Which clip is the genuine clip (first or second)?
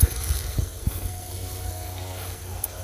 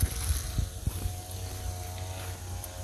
second